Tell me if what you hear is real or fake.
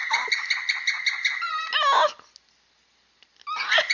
real